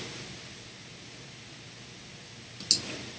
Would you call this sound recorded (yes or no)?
yes